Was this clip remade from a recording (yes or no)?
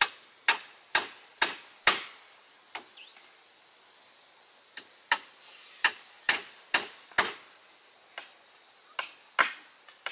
no